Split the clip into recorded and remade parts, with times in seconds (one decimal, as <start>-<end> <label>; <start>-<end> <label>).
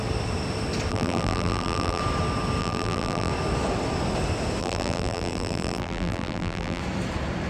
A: 0.0-0.9 recorded; 0.9-2.0 remade; 2.0-2.6 recorded; 2.6-3.3 remade; 3.3-4.6 recorded; 4.6-6.8 remade; 6.8-7.5 recorded